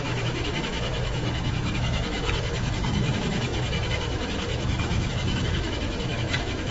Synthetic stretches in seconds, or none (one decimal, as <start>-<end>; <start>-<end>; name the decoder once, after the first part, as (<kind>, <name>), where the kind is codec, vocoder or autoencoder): 0.0-6.7 (autoencoder, DAC-VAE)